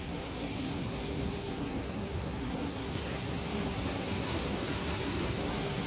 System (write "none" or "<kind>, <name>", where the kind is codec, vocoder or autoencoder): codec, SNAC